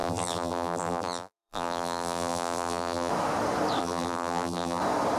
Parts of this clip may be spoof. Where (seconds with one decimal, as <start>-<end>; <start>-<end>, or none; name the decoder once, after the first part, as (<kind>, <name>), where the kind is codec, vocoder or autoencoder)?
0.0-3.1 (vocoder, BigVGAN v2); 3.8-4.8